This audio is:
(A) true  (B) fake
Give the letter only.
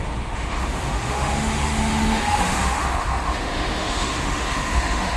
B